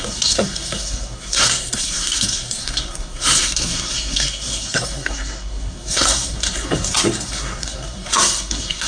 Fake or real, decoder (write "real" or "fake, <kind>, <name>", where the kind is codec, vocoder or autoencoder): fake, codec, SNAC